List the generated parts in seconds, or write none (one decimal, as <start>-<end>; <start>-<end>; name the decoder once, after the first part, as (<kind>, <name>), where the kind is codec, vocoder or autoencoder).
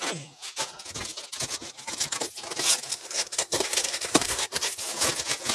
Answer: 2.9-4.8 (codec, SNAC)